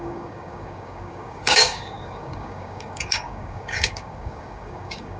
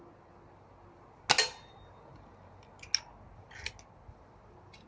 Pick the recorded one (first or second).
second